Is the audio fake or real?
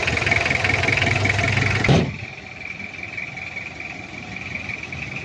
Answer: real